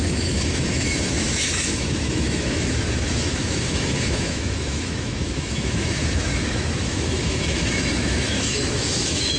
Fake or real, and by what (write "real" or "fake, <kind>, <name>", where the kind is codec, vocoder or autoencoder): fake, autoencoder, DAC-VAE